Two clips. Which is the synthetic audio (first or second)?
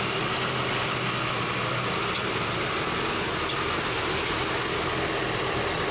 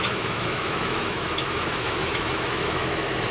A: second